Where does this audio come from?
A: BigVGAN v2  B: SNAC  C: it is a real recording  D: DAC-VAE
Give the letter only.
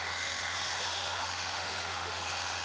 D